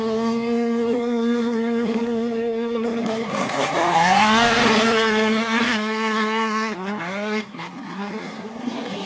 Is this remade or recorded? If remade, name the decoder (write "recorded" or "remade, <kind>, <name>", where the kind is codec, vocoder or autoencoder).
remade, codec, SNAC